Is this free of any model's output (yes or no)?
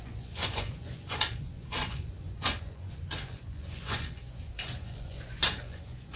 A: no